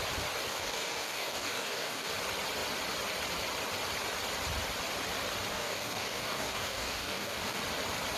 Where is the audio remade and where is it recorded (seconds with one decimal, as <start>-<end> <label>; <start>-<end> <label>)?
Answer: 0.0-0.5 recorded; 0.5-2.1 remade; 2.1-5.5 recorded; 5.5-7.6 remade; 7.6-8.2 recorded